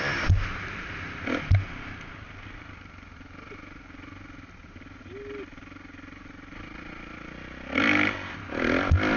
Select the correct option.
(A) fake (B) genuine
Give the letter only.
B